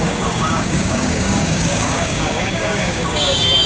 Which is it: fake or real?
fake